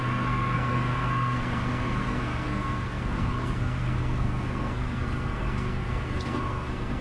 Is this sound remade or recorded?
remade